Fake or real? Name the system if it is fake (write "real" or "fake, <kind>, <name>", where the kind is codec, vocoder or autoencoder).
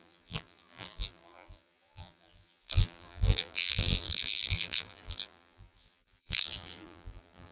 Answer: fake, vocoder, BigVGAN v2